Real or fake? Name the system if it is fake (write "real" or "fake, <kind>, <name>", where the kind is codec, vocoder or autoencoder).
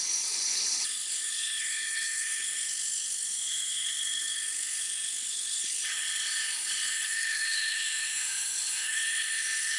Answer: fake, codec, HILCodec